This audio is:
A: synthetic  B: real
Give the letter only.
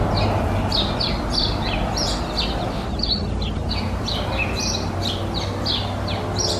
B